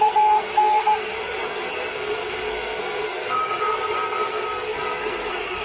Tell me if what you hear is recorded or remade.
remade